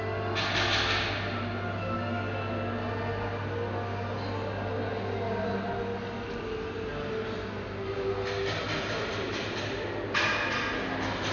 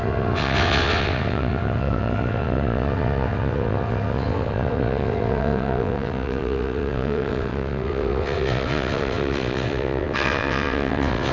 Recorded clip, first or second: first